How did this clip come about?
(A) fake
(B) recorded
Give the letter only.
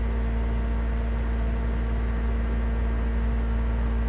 B